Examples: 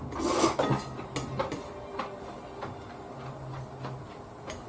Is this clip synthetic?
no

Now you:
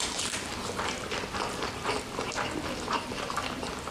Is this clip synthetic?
yes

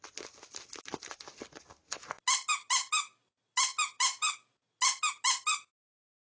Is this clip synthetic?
no